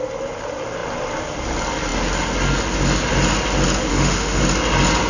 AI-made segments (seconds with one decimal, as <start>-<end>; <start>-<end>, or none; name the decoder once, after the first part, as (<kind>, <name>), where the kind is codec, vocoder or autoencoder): 3.9-4.4 (autoencoder, DAC-VAE)